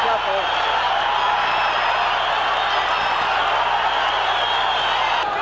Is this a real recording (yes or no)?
yes